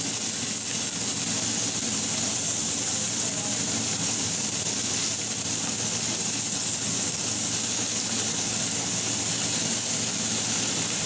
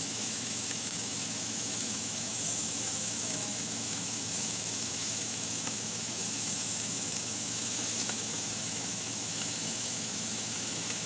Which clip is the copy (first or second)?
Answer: second